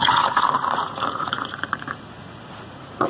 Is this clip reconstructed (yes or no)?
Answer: yes